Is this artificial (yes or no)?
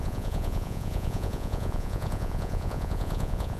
yes